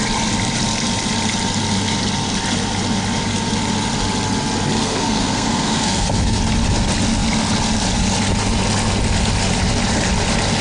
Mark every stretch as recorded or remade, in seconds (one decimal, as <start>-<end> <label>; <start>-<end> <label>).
0.0-4.8 recorded; 4.8-6.4 remade; 6.4-10.6 recorded